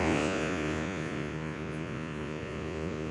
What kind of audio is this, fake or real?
fake